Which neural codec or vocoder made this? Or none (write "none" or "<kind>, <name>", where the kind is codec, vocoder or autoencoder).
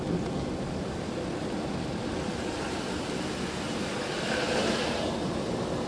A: none